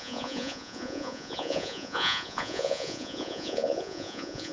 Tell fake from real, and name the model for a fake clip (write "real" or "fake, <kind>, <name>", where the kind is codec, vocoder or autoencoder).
fake, vocoder, Vocos